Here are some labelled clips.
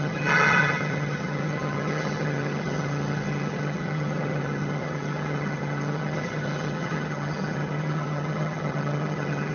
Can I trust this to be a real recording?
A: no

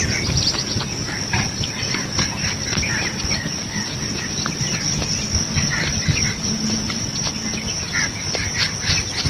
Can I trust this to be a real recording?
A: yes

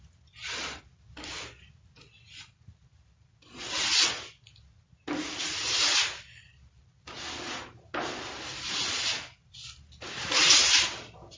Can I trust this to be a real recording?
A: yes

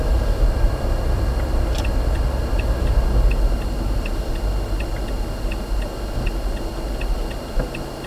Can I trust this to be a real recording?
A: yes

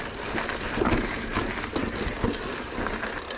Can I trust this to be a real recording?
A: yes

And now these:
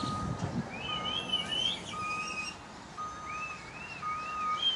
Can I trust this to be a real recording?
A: yes